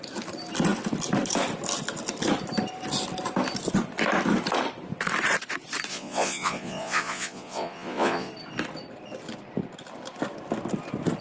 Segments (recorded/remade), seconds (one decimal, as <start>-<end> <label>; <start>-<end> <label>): 0.0-5.9 recorded; 5.9-8.3 remade; 8.3-11.2 recorded